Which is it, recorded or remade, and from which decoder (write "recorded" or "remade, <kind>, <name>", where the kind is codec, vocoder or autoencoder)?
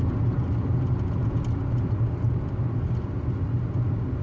recorded